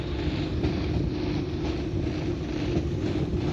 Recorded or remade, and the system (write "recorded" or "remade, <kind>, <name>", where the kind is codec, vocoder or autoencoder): recorded